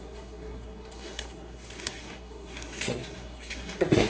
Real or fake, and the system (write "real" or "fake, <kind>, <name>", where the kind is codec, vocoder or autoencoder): fake, codec, SNAC